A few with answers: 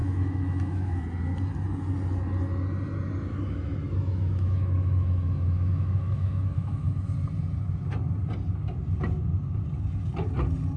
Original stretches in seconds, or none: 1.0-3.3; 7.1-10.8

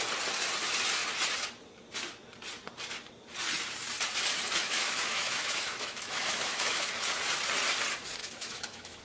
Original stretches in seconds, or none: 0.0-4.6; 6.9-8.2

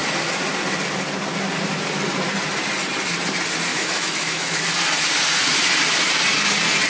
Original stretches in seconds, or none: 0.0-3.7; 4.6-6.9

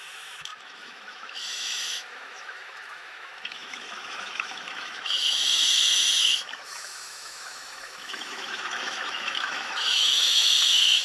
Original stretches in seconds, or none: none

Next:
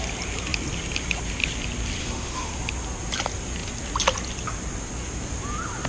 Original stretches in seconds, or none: 0.0-2.0; 2.5-5.9

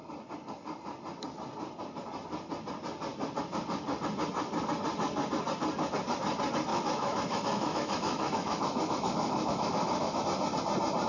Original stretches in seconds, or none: 0.0-6.7; 10.2-11.1